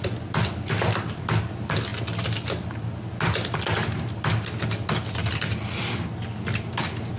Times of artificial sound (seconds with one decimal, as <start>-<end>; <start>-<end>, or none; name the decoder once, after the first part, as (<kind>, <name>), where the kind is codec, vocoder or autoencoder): none